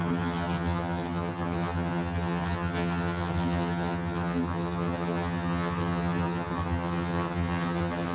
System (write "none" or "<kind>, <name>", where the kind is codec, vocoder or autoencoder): vocoder, HiFi-GAN